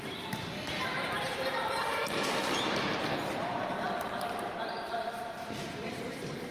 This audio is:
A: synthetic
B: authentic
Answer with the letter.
A